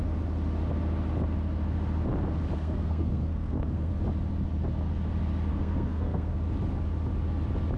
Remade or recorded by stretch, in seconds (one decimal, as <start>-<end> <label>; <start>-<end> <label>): 0.0-2.6 recorded; 2.6-3.9 remade; 3.9-5.5 recorded; 5.5-6.3 remade; 6.3-7.8 recorded